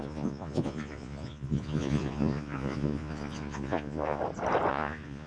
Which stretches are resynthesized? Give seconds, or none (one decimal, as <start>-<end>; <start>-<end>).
0.0-4.2; 4.7-5.3